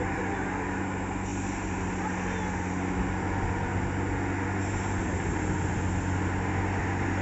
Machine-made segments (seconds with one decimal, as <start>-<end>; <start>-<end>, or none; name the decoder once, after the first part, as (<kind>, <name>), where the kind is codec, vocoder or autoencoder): none